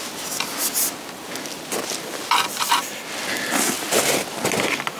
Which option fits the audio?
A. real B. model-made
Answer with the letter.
A